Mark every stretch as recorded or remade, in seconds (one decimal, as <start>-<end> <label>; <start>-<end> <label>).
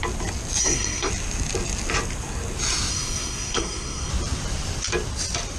0.0-0.6 recorded; 0.6-1.1 remade; 1.1-2.9 recorded; 2.9-4.1 remade; 4.1-5.6 recorded